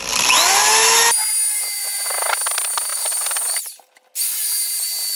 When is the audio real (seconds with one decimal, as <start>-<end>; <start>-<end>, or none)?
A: 0.0-2.9; 3.6-5.2